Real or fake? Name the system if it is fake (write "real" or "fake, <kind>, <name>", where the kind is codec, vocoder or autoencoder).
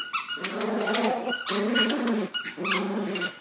real